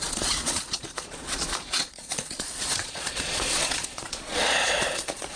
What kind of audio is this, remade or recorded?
remade